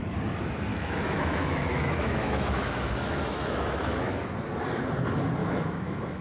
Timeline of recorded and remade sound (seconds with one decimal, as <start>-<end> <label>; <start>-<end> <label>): 0.0-0.7 recorded; 0.7-4.3 remade; 4.3-5.4 recorded; 5.4-6.2 remade